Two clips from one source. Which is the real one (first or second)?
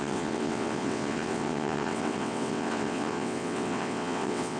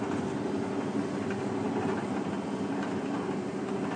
second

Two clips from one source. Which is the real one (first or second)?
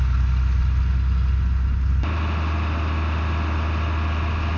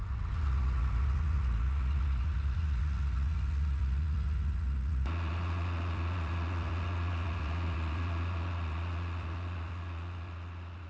first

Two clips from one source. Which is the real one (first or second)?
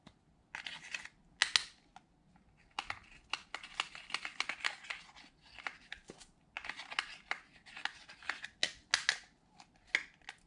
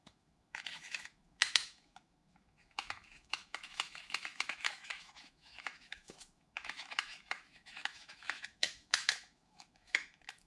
first